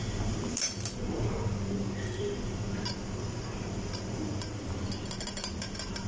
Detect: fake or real fake